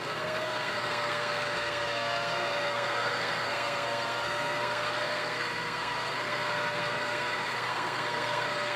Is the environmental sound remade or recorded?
remade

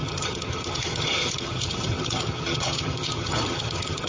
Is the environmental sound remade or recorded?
remade